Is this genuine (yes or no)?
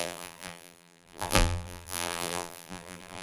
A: no